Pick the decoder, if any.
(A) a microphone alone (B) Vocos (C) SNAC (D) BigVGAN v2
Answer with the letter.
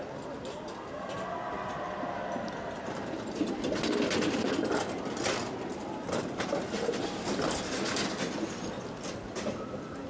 A